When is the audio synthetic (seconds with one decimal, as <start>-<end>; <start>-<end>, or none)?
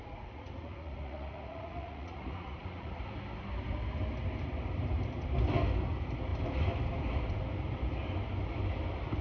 0.0-3.0